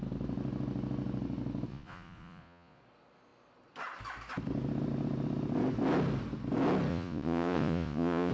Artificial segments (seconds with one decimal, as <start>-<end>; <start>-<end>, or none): 1.7-2.8; 6.9-8.3